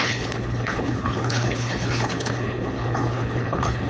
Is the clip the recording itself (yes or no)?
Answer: no